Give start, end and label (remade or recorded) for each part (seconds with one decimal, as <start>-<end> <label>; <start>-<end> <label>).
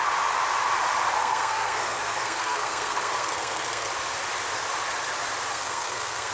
0.0-1.2 recorded; 1.2-3.9 remade; 3.9-5.5 recorded; 5.5-6.3 remade